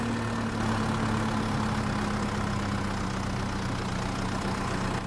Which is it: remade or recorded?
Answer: recorded